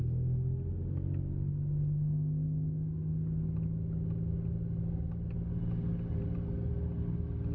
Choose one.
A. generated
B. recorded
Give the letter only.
B